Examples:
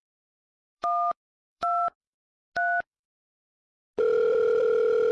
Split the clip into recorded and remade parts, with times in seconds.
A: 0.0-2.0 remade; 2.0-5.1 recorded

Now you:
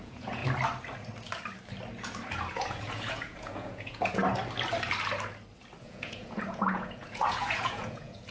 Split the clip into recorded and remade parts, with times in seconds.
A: 0.0-0.4 remade; 0.4-2.5 recorded; 2.5-4.2 remade; 4.2-5.8 recorded; 5.8-8.3 remade

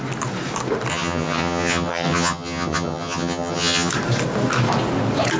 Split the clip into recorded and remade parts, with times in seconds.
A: 0.0-0.9 recorded; 0.9-3.9 remade; 3.9-5.4 recorded

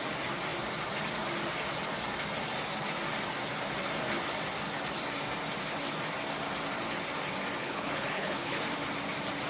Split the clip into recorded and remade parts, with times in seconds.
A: 0.0-7.6 recorded; 7.6-8.6 remade; 8.6-9.5 recorded

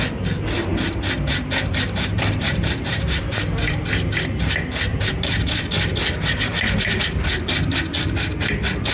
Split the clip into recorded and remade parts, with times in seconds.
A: 0.0-0.7 recorded; 0.7-3.8 remade; 3.8-4.9 recorded; 4.9-7.0 remade; 7.0-8.9 recorded

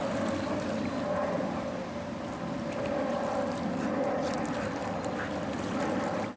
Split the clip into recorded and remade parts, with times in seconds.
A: 0.0-6.4 recorded